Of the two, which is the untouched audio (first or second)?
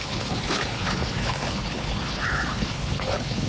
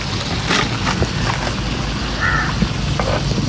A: second